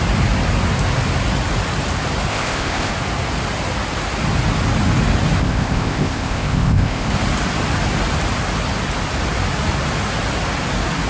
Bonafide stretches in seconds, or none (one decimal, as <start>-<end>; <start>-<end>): 0.0-2.3; 2.9-5.4; 7.1-11.1